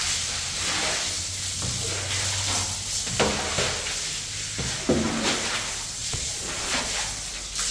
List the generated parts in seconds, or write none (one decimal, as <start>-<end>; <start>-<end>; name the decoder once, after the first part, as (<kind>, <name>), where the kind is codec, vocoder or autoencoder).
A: 6.0-6.9 (vocoder, Vocos)